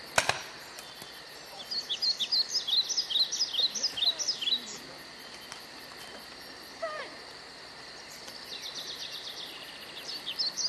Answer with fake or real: real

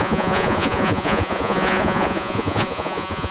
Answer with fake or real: fake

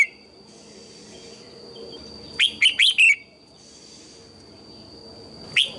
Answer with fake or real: real